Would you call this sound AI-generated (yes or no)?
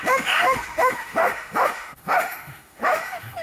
yes